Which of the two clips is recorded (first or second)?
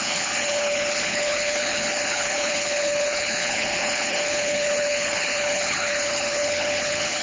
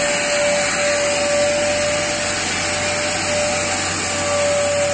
second